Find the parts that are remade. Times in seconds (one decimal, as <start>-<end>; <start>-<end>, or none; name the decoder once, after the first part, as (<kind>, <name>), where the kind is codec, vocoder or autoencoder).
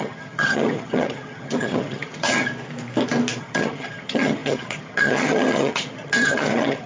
0.0-2.5 (vocoder, HiFi-GAN); 3.4-6.9